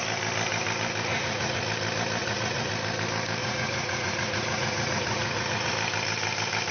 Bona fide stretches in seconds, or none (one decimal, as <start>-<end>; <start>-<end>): 0.0-1.1; 1.6-2.2; 2.7-3.4; 5.7-6.7